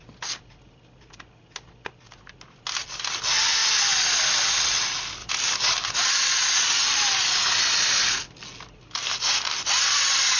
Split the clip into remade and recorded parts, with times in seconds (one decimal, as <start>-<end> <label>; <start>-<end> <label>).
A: 0.0-3.6 recorded; 3.6-4.8 remade; 4.8-5.2 recorded; 5.2-6.3 remade; 6.3-10.4 recorded